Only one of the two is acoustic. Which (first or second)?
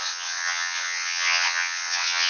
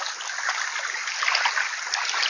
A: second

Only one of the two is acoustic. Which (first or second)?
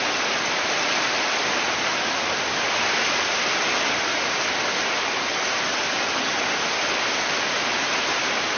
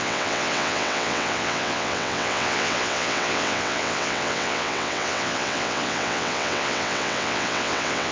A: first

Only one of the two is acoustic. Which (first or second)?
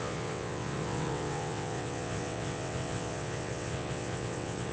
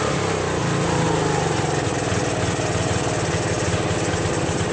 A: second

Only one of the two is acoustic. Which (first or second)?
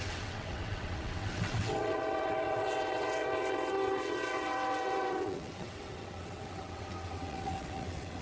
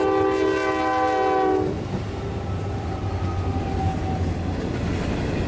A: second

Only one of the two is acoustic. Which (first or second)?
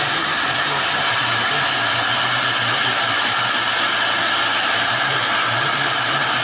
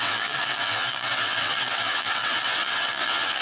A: first